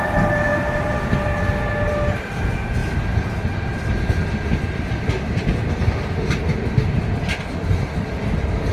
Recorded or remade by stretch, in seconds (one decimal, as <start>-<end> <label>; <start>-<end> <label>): 0.0-8.7 recorded